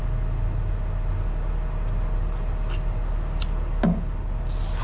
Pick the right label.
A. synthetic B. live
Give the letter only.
B